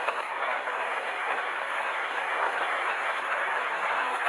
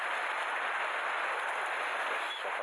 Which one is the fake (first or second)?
first